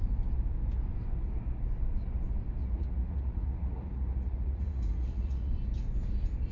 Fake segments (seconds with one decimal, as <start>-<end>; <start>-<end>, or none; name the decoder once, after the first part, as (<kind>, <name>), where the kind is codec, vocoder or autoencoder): 2.6-5.5 (vocoder, Vocos)